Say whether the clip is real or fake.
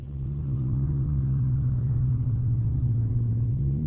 fake